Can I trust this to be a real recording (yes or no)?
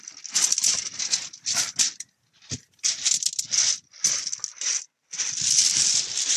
yes